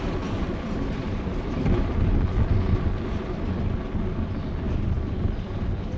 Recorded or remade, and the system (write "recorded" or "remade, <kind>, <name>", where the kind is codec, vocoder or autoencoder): recorded